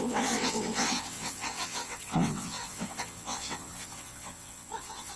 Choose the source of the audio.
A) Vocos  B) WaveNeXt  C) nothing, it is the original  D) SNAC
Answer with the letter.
B